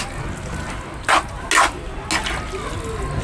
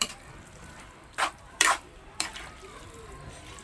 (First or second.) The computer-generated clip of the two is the second